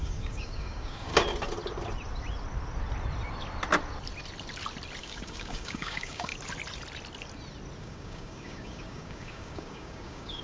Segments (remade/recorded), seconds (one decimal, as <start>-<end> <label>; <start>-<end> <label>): 0.0-1.1 remade; 1.1-5.0 recorded; 5.0-6.3 remade; 6.3-7.8 recorded; 7.8-10.4 remade